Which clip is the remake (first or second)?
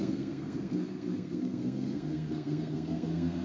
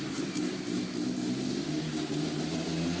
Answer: first